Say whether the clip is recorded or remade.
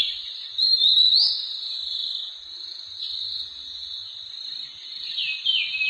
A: recorded